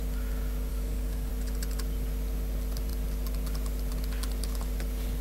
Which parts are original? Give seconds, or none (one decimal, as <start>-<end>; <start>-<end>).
0.0-0.7; 1.3-5.2